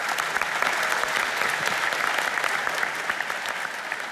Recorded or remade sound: recorded